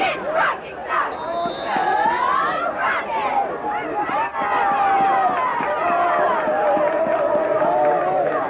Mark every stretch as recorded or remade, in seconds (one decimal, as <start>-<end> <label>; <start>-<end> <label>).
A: 0.0-8.5 recorded